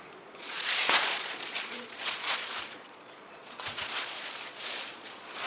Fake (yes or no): yes